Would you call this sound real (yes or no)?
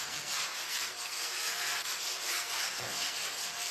no